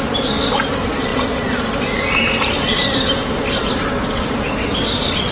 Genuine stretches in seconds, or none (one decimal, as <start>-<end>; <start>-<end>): 0.0-5.3